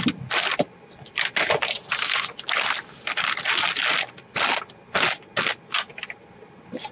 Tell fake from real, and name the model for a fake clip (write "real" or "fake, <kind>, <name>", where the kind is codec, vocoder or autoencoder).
real